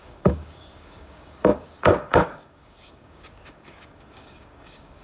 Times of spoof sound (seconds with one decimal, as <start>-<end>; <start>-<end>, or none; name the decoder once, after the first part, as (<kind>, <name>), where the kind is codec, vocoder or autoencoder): 0.0-5.0 (codec, DAC)